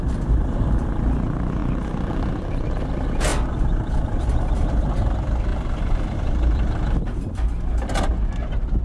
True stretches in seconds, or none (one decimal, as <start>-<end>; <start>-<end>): 0.0-5.5; 8.3-8.8